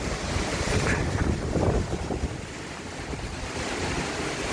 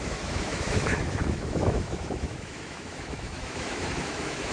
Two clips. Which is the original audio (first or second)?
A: first